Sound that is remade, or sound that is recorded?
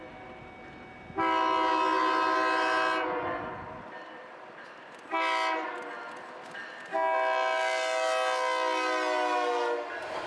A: recorded